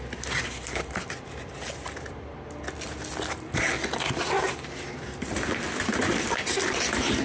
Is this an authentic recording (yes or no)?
yes